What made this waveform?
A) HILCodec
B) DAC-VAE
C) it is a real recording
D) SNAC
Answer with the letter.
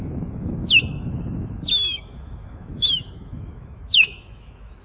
B